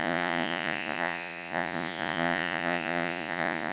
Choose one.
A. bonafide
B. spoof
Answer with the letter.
B